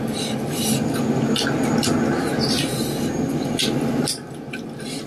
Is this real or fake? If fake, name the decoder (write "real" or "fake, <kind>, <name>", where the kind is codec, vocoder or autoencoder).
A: real